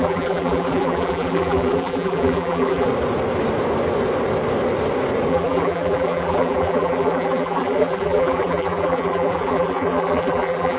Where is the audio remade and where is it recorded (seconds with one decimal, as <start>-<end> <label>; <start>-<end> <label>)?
0.0-2.9 remade; 2.9-5.3 recorded; 5.3-10.8 remade